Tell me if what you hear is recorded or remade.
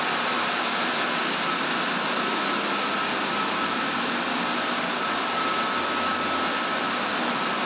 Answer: recorded